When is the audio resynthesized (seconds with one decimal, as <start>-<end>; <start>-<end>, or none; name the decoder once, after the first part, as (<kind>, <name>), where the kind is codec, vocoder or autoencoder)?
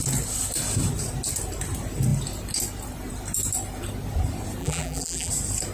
4.6-5.3 (vocoder, BigVGAN v2)